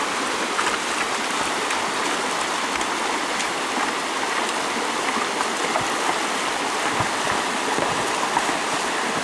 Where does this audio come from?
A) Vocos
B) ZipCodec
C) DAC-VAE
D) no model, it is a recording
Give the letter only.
D